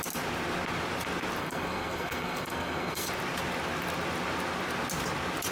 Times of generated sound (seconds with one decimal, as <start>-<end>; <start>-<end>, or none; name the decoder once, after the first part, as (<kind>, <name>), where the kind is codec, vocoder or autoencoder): 1.4-3.1 (codec, SNAC)